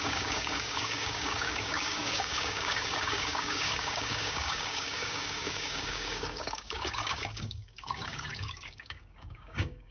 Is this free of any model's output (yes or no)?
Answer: no